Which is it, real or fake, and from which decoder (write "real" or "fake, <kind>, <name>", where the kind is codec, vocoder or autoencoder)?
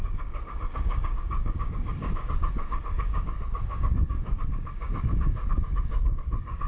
fake, codec, DAC